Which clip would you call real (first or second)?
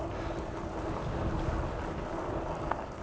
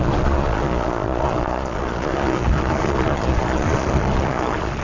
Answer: first